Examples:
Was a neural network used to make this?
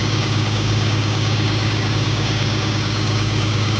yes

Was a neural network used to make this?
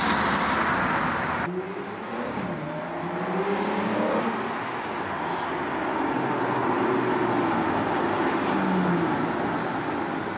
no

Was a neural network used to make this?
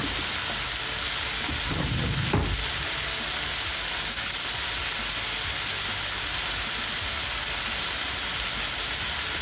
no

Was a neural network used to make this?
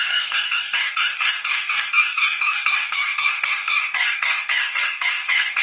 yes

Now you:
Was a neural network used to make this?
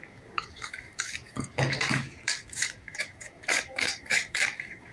yes